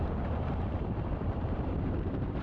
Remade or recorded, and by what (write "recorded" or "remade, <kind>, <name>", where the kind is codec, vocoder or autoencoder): remade, vocoder, BigVGAN v2